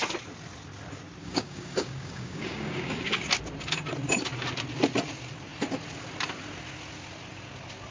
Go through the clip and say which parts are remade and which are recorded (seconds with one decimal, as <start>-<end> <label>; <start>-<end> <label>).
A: 0.0-1.2 recorded; 1.2-3.3 remade; 3.3-7.9 recorded